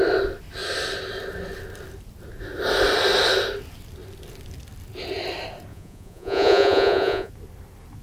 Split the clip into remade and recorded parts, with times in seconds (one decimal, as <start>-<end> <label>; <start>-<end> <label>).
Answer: 0.0-5.7 recorded; 5.7-7.3 remade; 7.3-8.0 recorded